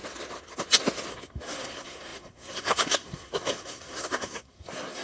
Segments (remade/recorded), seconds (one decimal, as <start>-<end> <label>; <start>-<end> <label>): 0.0-1.1 recorded; 1.1-5.0 remade